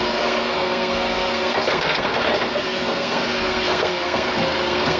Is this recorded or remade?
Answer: remade